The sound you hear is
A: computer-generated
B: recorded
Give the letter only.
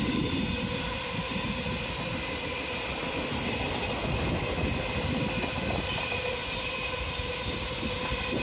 B